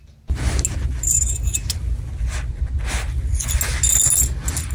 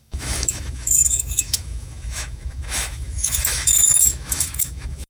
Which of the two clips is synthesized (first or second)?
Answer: second